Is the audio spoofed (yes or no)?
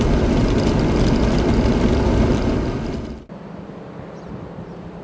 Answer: no